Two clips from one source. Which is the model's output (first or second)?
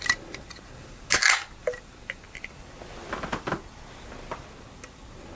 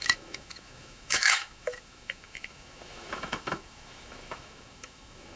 second